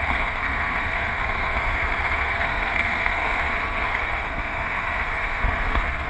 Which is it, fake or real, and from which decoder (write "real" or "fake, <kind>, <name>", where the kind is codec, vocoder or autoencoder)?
fake, codec, SNAC